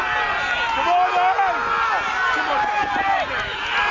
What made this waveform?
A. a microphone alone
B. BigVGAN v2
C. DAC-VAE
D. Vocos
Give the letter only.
A